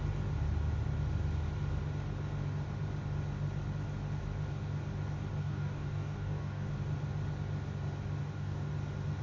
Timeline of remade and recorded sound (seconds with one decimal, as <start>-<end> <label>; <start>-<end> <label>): 0.0-5.4 recorded; 5.4-6.7 remade; 6.7-8.2 recorded; 8.2-8.7 remade; 8.7-9.2 recorded